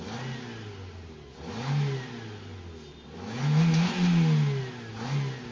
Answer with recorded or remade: recorded